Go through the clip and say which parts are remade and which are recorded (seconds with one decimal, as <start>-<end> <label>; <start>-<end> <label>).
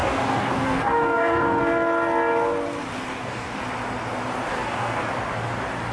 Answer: 0.0-1.6 remade; 1.6-3.1 recorded; 3.1-3.6 remade; 3.6-4.5 recorded; 4.5-5.1 remade; 5.1-5.9 recorded